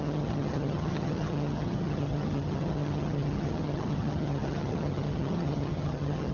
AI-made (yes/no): yes